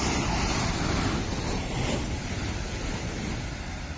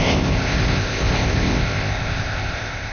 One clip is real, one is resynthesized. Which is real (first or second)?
first